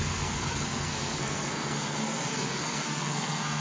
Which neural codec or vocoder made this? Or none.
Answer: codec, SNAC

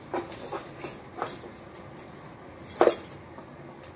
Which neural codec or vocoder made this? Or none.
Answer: none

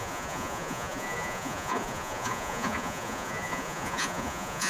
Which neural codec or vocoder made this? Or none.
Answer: vocoder, Vocos